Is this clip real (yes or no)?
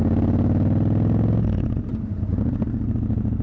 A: yes